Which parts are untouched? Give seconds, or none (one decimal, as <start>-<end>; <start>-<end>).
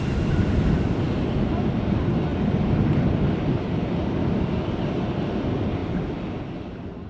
0.0-7.1